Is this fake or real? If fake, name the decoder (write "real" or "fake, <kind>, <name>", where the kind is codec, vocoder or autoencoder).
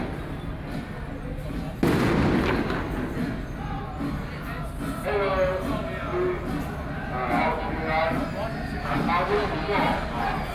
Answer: real